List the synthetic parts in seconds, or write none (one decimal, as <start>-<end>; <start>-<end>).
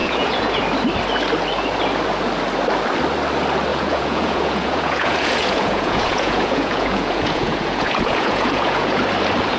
0.0-0.6; 3.7-9.0